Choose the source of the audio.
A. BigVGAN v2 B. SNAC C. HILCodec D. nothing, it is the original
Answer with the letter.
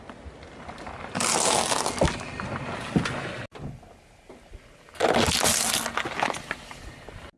D